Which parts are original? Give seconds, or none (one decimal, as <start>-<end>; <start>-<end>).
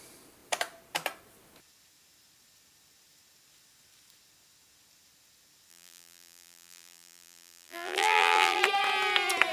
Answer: 0.0-5.7; 8.6-9.5